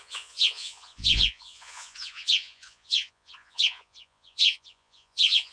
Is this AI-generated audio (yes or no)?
yes